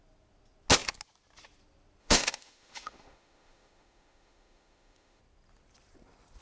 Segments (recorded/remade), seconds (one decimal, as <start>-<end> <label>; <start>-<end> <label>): 0.0-2.0 recorded; 2.0-5.2 remade; 5.2-6.4 recorded